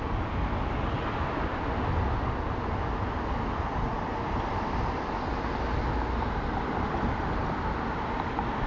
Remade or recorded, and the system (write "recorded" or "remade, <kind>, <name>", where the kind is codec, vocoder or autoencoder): recorded